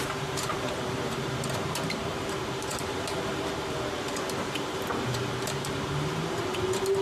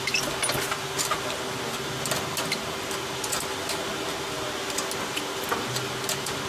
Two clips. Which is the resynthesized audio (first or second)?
first